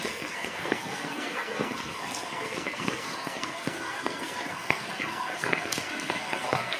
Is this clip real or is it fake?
fake